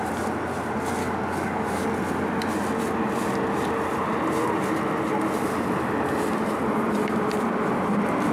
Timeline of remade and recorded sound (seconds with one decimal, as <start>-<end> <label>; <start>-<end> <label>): 0.0-1.0 recorded; 1.0-1.8 remade; 1.8-8.3 recorded